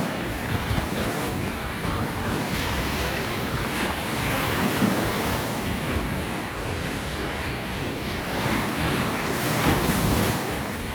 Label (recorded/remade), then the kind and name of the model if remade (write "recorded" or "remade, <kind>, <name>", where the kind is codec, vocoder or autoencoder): remade, codec, DAC